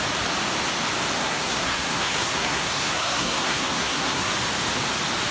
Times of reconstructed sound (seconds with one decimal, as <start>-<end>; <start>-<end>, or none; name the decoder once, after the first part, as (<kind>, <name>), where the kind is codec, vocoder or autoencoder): 1.2-4.3 (codec, SNAC)